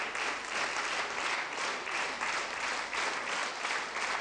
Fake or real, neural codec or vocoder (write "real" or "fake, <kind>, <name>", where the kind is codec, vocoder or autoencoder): real